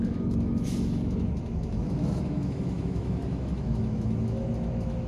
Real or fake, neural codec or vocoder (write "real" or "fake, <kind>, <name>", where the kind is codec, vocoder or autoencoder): fake, autoencoder, DAC-VAE